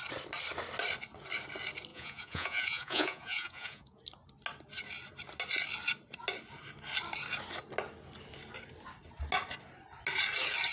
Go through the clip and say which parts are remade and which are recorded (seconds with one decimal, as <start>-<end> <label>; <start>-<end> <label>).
0.0-1.9 recorded; 1.9-4.0 remade; 4.0-10.7 recorded